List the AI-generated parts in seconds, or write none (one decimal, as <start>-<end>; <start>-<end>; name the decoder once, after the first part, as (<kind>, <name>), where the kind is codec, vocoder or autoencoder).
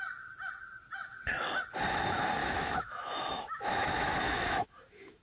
2.4-5.2 (autoencoder, DAC-VAE)